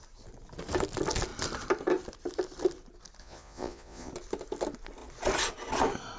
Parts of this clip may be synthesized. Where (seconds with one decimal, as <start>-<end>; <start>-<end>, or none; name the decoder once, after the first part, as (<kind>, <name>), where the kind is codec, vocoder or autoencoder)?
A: 3.2-4.1 (vocoder, Vocos)